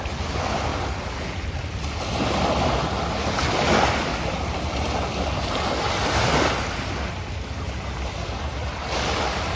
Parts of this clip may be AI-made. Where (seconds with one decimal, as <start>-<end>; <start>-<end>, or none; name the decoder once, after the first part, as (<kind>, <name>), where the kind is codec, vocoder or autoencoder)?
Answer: none